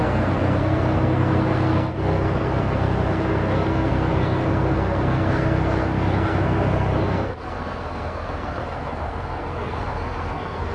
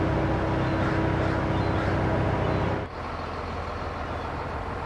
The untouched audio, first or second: second